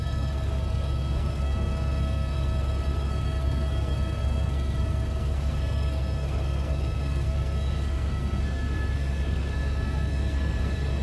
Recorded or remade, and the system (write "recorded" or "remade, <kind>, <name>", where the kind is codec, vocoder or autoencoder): remade, codec, SNAC